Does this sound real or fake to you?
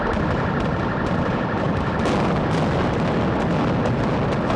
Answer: real